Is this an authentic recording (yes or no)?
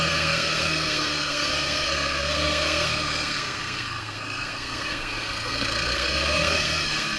no